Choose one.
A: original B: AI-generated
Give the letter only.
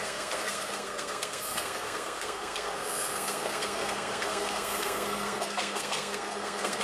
B